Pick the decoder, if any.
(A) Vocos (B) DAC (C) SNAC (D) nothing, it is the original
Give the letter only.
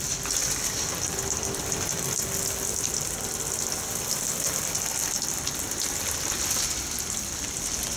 D